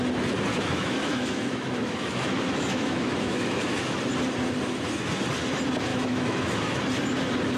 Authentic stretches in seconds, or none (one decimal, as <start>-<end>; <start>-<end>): 0.0-0.5; 4.0-5.9; 6.8-7.6